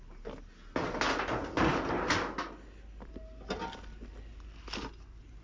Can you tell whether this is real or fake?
real